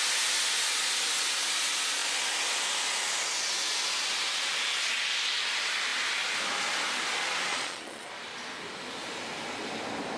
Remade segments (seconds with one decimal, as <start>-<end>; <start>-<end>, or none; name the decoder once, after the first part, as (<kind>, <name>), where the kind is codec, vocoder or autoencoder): 7.5-8.1 (vocoder, Vocos)